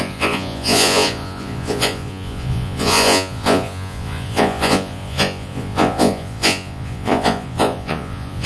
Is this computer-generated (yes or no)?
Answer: yes